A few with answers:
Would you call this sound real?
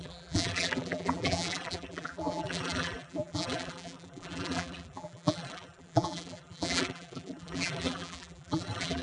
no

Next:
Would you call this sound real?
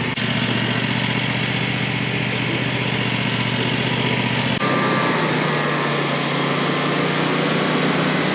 yes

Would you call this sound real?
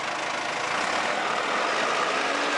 yes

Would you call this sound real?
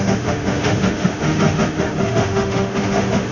no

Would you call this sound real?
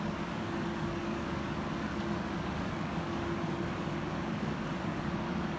no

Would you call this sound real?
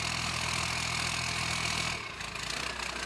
yes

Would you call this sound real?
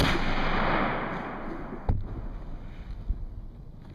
yes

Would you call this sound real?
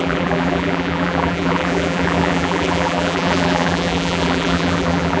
no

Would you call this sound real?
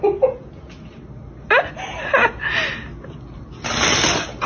yes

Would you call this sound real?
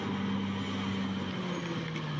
yes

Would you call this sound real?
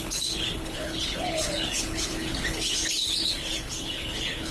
no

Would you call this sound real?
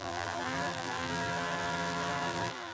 no